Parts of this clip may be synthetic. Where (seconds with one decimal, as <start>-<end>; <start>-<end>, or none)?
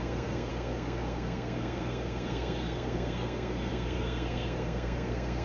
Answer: 0.0-5.4